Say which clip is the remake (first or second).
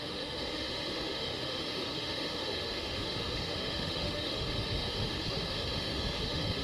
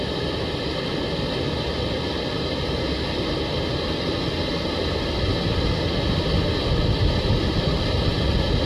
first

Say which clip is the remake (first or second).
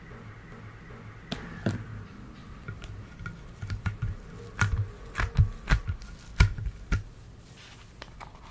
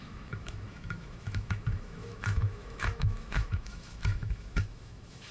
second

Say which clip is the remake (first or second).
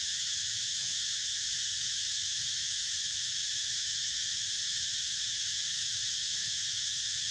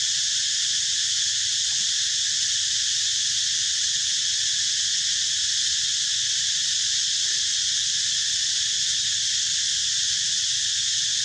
first